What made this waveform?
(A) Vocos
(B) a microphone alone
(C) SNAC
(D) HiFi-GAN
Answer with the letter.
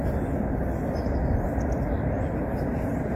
B